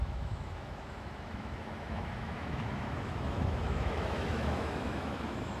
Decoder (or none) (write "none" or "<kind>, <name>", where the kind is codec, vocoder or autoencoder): autoencoder, DAC-VAE